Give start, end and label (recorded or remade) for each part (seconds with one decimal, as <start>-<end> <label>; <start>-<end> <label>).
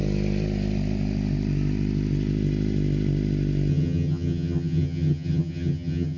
0.0-3.7 recorded; 3.7-6.2 remade